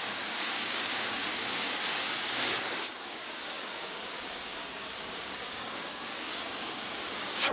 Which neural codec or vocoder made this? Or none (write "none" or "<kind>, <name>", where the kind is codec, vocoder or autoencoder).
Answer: codec, DAC